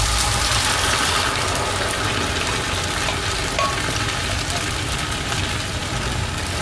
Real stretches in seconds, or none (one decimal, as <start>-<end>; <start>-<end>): 0.5-4.5; 5.8-6.6